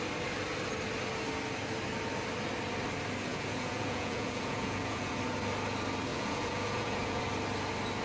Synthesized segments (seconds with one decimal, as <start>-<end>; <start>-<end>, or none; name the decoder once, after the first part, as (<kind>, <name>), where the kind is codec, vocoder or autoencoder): 3.3-5.1 (vocoder, Vocos); 6.1-7.2